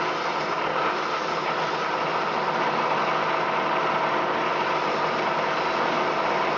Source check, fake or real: real